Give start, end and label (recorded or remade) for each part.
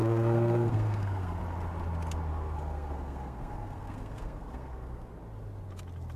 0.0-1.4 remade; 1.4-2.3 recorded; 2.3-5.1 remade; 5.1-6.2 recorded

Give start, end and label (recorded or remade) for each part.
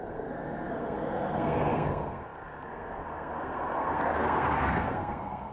0.0-5.5 remade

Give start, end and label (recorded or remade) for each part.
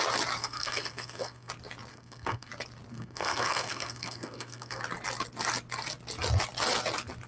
0.0-0.4 recorded; 0.4-1.5 remade; 1.5-1.9 recorded; 1.9-2.5 remade; 2.5-2.9 recorded; 2.9-4.8 remade; 4.8-7.3 recorded